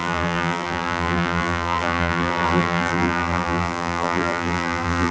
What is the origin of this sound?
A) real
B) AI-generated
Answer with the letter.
B